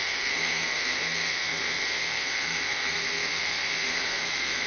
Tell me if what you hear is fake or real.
fake